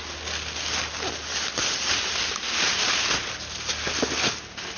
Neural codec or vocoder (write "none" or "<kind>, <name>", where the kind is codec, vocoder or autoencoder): none